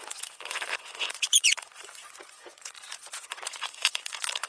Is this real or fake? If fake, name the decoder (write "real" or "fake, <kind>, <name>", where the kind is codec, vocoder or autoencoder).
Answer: fake, vocoder, Vocos